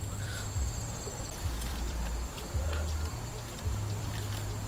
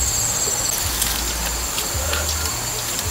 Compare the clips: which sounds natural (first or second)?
second